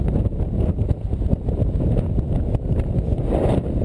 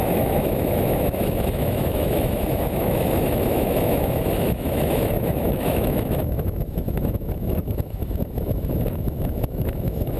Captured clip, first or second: first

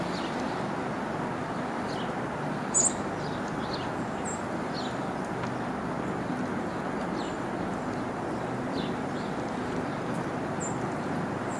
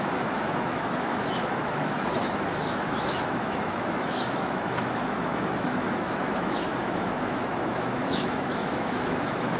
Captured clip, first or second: first